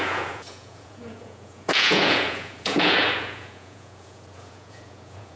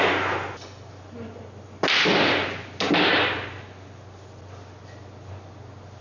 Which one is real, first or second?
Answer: second